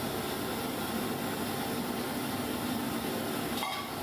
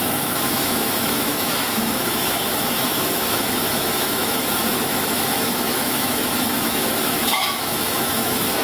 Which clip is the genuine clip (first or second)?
first